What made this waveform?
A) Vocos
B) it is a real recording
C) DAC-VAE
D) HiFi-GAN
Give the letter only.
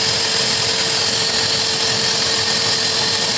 B